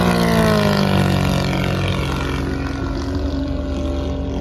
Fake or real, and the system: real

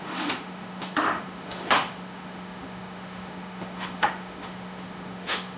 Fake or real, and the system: fake, autoencoder, DAC-VAE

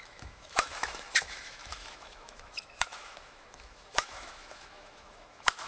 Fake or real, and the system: fake, autoencoder, DAC-VAE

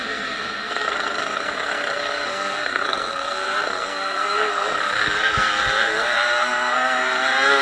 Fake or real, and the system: fake, codec, SNAC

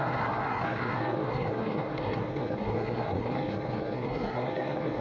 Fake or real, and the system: fake, codec, SNAC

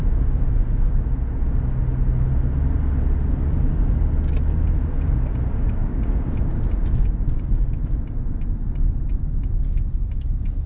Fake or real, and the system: real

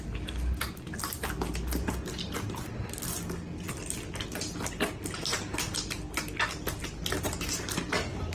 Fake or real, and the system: real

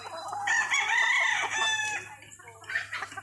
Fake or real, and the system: real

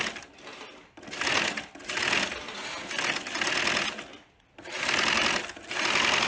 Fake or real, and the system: real